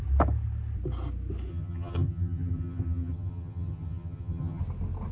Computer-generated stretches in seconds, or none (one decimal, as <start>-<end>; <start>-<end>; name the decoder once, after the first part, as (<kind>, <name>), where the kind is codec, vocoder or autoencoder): 1.5-4.6 (vocoder, HiFi-GAN)